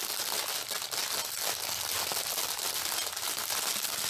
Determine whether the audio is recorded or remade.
recorded